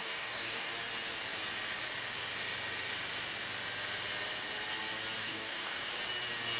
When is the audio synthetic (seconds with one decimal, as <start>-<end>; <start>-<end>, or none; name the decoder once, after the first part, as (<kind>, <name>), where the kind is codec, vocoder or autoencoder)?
0.0-0.7 (codec, DAC); 5.2-5.9